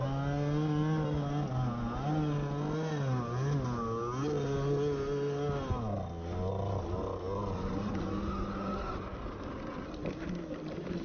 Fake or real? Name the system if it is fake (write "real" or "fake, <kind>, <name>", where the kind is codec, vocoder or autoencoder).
real